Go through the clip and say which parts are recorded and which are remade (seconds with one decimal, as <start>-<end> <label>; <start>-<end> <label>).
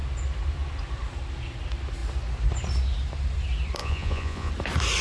0.0-3.8 recorded; 3.8-4.5 remade; 4.5-5.0 recorded